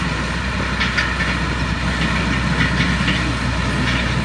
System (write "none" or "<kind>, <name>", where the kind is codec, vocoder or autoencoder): none